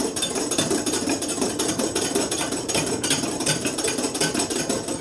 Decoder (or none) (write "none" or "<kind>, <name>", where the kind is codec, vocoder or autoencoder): vocoder, BigVGAN v2